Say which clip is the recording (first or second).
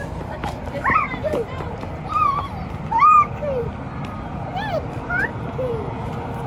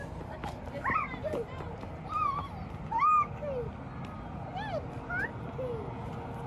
second